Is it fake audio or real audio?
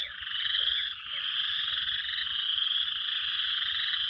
fake